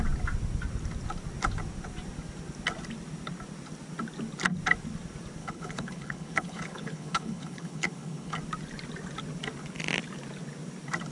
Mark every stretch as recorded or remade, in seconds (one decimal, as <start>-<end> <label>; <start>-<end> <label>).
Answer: 0.0-5.4 recorded; 5.4-8.4 remade; 8.4-11.1 recorded